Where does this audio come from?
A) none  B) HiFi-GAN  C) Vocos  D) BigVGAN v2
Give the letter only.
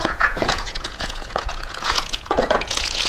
C